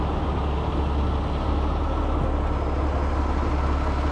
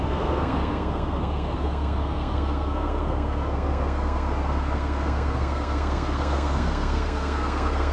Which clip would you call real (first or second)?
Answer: first